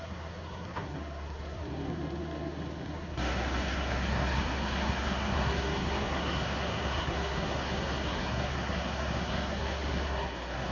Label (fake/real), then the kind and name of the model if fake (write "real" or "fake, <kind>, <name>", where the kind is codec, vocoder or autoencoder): fake, codec, SNAC